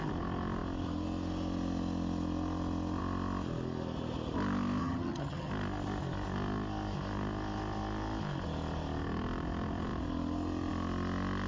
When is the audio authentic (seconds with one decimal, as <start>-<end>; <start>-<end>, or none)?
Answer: 0.0-4.8; 5.5-11.5